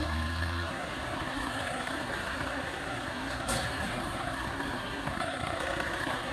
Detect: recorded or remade remade